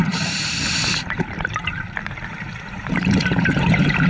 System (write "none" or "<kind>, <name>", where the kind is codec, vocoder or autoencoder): vocoder, BigVGAN v2